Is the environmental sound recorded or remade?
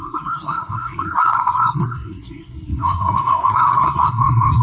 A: remade